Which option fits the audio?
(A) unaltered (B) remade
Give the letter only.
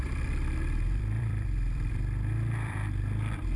B